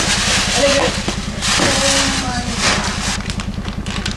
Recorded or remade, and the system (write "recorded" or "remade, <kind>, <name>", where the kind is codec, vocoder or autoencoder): recorded